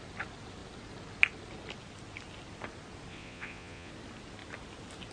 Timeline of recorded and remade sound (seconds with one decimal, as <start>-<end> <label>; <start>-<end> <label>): 0.0-3.1 recorded; 3.1-3.9 remade; 3.9-5.1 recorded